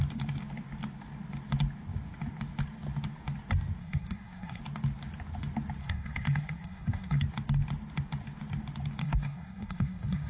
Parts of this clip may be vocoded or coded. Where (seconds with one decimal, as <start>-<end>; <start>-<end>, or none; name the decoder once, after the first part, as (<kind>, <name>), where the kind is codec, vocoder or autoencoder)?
3.8-4.6 (codec, SNAC); 5.8-7.2; 9.0-10.3